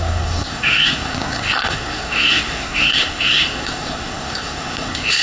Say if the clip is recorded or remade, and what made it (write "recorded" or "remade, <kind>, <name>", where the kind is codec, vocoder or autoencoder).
remade, codec, SNAC